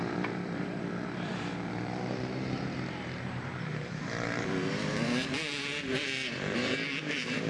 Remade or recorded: remade